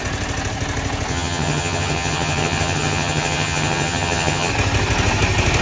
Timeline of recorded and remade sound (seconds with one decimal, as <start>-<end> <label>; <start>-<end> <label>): 0.0-1.1 recorded; 1.1-4.5 remade; 4.5-5.6 recorded